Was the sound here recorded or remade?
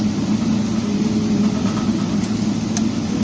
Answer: recorded